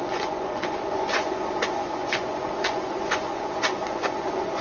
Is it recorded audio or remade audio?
remade